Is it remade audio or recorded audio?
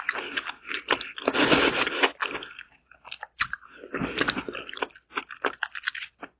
recorded